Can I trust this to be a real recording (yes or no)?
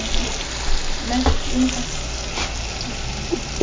yes